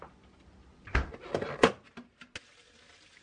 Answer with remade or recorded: recorded